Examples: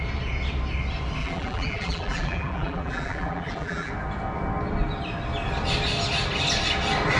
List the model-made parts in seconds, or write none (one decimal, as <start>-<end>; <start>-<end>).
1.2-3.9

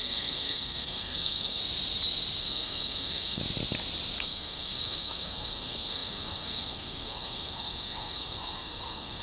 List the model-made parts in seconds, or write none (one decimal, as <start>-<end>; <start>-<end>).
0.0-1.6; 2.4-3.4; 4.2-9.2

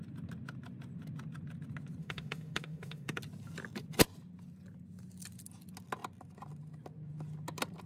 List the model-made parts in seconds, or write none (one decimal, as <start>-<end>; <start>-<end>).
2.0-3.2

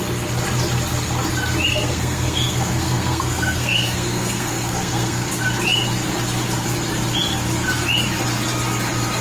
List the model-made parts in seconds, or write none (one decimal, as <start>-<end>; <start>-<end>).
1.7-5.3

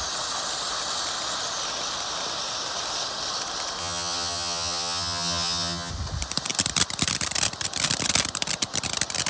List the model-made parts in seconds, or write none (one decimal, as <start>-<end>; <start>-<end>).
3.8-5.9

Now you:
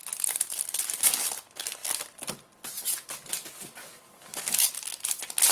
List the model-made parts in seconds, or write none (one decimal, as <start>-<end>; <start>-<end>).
3.8-4.7